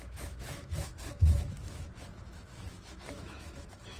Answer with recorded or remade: remade